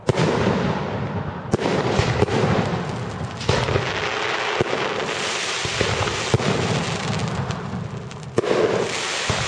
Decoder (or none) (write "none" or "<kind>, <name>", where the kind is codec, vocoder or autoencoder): none